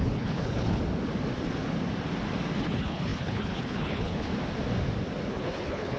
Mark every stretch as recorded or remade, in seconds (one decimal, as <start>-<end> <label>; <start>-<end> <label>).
0.0-0.8 remade; 0.8-2.6 recorded; 2.6-4.3 remade; 4.3-5.3 recorded; 5.3-6.0 remade